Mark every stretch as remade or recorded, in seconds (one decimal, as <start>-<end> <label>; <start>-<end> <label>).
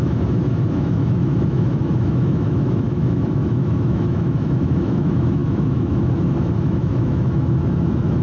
0.0-8.2 remade